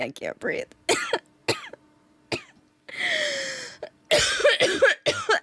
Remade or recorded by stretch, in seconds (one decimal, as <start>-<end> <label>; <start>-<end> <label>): 0.0-5.4 recorded